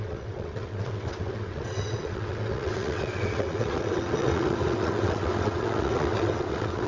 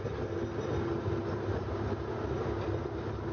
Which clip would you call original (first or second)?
second